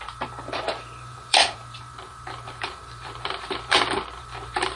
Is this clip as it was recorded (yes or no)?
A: no